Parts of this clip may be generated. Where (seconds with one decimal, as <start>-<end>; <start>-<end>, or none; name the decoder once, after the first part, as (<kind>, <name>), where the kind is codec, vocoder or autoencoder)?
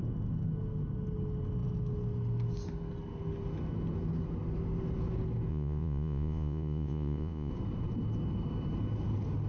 5.5-7.5 (vocoder, Vocos)